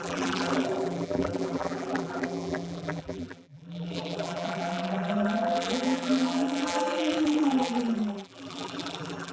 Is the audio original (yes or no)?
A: no